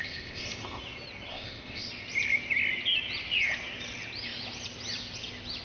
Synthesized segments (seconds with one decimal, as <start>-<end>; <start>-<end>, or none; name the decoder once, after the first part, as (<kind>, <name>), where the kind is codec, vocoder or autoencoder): 0.0-0.8 (codec, ZipCodec); 1.3-1.9